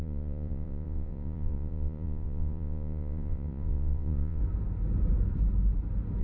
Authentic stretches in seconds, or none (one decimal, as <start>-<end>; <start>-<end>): 4.4-6.2